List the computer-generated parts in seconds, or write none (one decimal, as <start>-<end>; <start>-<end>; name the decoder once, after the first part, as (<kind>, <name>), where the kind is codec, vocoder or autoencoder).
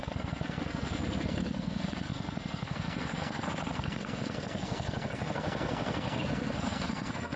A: 0.0-7.4 (codec, SNAC)